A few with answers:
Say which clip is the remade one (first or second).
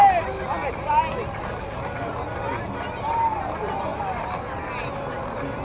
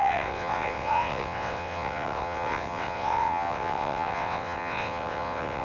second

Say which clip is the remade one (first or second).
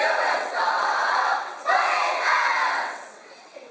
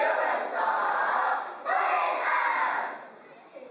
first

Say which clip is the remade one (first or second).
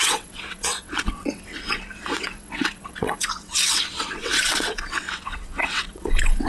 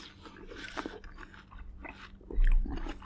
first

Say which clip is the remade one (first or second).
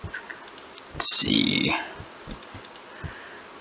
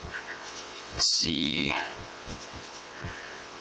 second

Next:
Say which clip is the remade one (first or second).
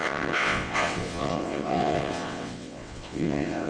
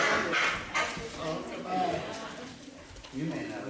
first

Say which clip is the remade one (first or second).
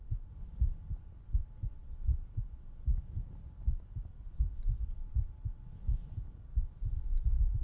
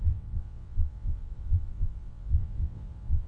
second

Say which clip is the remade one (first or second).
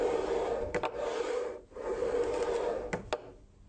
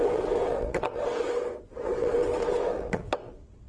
second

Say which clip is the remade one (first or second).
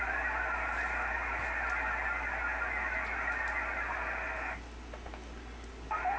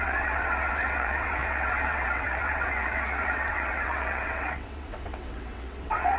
second